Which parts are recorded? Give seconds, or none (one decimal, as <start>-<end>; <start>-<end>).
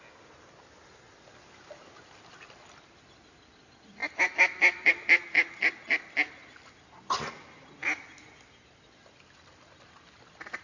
0.0-10.6